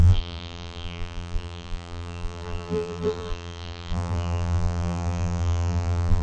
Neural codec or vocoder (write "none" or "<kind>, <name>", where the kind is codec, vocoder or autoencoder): vocoder, BigVGAN v2